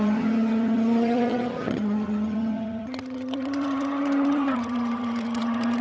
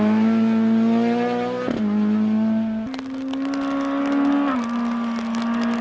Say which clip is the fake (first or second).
first